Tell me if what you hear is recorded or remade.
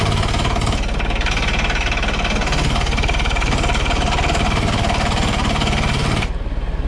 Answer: recorded